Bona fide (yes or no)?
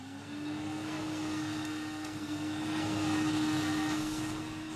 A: no